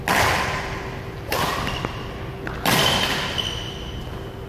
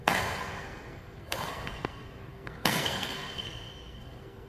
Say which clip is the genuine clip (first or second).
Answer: first